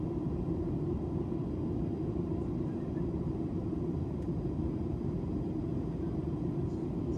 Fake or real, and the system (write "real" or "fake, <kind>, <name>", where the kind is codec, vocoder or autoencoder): fake, vocoder, BigVGAN v2